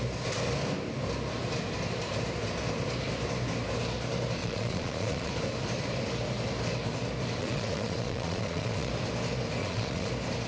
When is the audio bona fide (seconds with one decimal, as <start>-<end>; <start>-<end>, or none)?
0.0-4.4; 5.3-7.4; 8.9-9.6; 10.1-10.5